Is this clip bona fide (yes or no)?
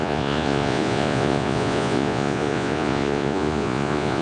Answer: no